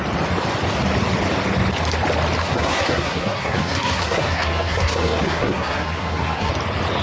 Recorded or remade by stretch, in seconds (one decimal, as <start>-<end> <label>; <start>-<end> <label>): 0.0-2.4 recorded; 2.4-6.5 remade; 6.5-7.0 recorded